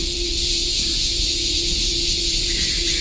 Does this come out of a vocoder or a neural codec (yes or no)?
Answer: yes